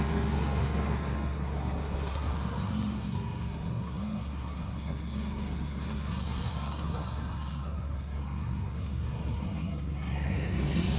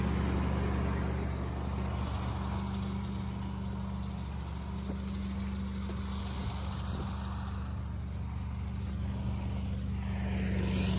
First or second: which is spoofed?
first